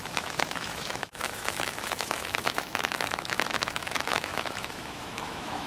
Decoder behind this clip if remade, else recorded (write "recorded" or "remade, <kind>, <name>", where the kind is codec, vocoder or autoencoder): remade, autoencoder, DAC-VAE